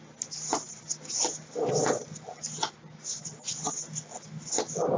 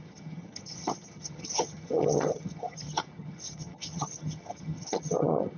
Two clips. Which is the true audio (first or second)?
first